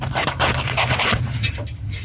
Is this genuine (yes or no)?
no